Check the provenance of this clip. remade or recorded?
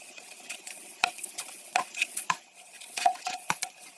remade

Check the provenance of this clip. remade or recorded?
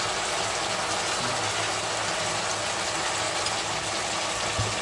recorded